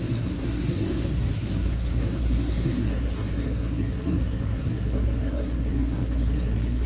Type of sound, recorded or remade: remade